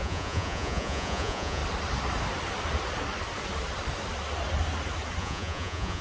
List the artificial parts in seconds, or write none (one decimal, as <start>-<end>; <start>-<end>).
0.0-1.6; 5.2-6.0